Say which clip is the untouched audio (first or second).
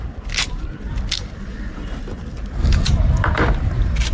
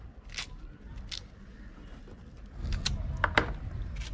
second